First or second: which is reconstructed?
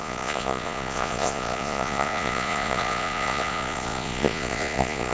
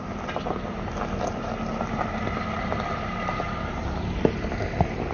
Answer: first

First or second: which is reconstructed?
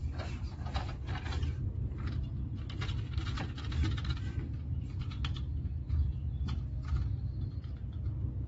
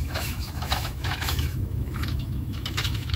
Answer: second